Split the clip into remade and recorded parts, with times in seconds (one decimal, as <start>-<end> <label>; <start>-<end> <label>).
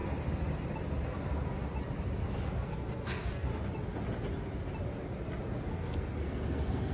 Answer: 0.0-2.6 recorded; 2.6-3.5 remade; 3.5-5.7 recorded; 5.7-6.9 remade